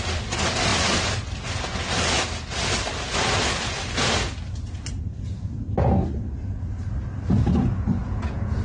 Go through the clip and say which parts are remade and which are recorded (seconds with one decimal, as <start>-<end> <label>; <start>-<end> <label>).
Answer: 0.0-8.0 recorded; 8.0-8.6 remade